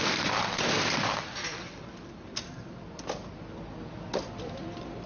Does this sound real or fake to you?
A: fake